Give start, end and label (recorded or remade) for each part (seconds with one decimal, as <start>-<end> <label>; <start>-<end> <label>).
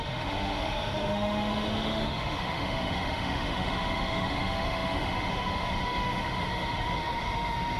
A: 0.0-7.8 remade